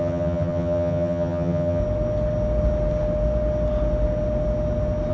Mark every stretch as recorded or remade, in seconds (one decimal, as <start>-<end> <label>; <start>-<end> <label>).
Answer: 0.0-1.8 remade; 1.8-5.1 recorded